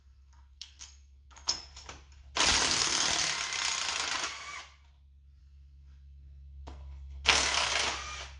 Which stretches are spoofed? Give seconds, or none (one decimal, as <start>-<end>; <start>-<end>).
0.0-1.5; 2.7-3.1; 5.4-7.7